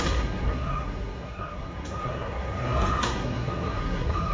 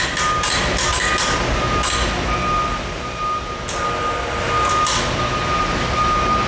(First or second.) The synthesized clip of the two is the first